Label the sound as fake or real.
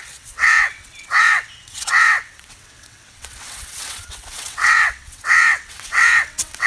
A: fake